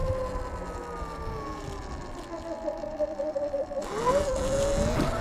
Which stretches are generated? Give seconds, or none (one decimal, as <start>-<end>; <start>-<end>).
2.9-4.0